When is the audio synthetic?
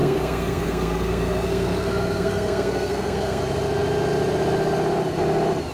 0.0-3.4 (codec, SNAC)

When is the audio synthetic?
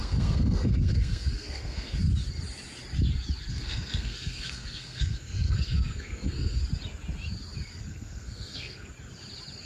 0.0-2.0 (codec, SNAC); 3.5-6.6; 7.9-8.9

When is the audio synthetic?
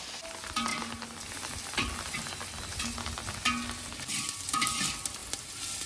none